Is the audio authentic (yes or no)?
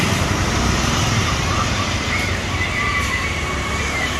no